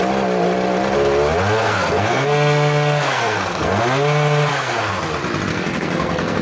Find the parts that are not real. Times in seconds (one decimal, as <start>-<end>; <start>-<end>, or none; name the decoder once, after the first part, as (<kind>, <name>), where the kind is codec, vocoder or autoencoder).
1.6-3.8 (codec, SNAC); 4.5-5.0; 5.5-6.4